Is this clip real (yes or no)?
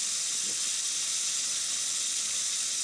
yes